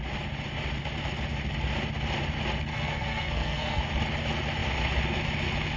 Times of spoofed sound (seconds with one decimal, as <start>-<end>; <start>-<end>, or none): 2.7-3.8